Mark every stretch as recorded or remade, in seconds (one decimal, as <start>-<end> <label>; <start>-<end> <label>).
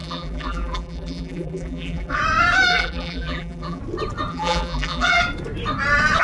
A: 0.0-2.2 remade; 2.2-2.7 recorded; 2.7-3.8 remade; 3.8-4.3 recorded; 4.3-5.2 remade; 5.2-6.2 recorded